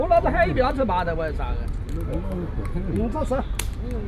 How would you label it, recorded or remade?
recorded